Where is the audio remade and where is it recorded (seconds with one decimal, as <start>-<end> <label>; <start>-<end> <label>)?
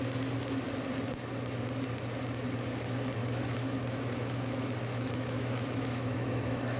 0.0-3.2 recorded; 3.2-6.8 remade